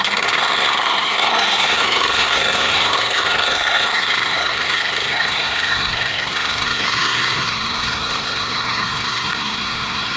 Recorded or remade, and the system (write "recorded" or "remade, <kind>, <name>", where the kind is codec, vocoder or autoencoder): remade, codec, SNAC